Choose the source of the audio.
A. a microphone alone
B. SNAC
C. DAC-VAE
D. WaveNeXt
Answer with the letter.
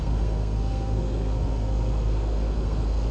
B